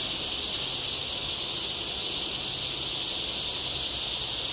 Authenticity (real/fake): real